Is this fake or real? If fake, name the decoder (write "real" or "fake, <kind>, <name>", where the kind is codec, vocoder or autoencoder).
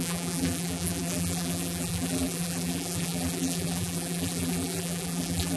fake, vocoder, BigVGAN v2